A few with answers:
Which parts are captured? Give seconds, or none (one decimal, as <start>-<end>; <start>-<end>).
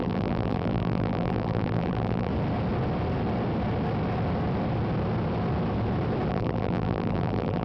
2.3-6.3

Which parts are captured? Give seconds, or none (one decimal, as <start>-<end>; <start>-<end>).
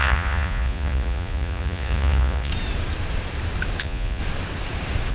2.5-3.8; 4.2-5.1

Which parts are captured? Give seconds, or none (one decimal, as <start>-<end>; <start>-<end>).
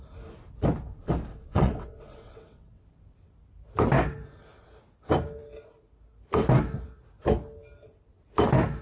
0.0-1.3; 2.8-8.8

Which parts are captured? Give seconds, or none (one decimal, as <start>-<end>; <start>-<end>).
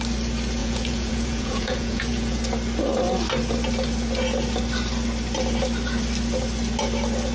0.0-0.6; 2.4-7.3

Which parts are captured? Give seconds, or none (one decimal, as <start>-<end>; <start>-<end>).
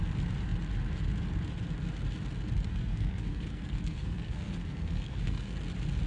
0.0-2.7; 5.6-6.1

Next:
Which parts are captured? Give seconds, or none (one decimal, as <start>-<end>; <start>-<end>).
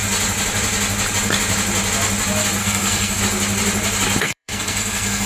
0.0-2.6; 3.2-4.2